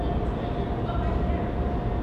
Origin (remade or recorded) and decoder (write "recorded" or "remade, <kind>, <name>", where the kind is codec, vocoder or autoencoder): recorded